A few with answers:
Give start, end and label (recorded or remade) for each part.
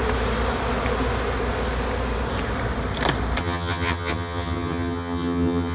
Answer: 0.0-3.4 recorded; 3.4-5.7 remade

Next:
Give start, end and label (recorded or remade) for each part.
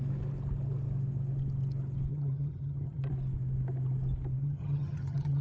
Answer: 0.0-2.1 recorded; 2.1-3.1 remade; 3.1-4.4 recorded; 4.4-5.4 remade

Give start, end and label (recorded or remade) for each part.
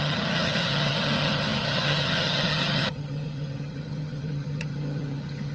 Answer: 0.0-5.5 remade